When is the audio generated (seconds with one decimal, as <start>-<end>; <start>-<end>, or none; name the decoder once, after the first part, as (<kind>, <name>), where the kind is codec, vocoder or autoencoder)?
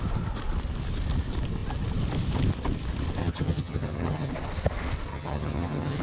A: 3.2-4.3 (vocoder, HiFi-GAN); 5.1-6.0